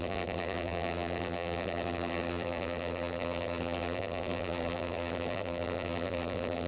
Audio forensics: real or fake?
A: fake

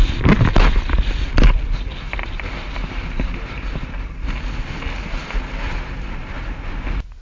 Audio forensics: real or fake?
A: real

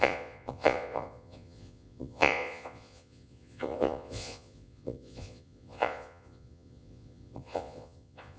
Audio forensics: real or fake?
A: fake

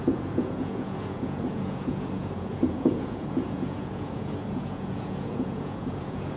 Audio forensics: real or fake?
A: fake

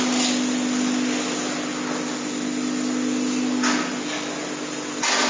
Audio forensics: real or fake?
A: real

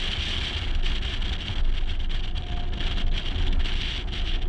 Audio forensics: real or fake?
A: real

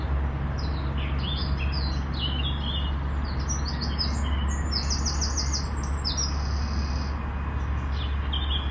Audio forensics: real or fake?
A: real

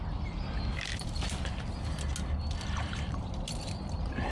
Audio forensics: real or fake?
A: real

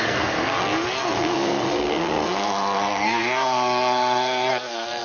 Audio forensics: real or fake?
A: fake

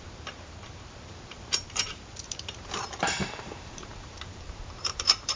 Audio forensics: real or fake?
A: fake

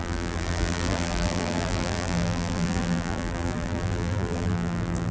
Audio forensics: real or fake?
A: fake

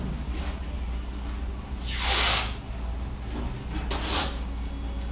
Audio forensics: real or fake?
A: real